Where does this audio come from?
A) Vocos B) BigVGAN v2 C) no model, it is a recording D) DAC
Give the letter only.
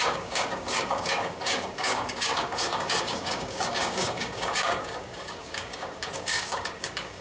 D